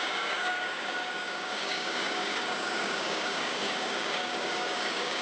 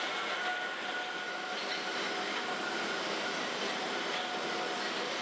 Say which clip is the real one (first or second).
second